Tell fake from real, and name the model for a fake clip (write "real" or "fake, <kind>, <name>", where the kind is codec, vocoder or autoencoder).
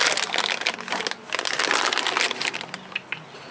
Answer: real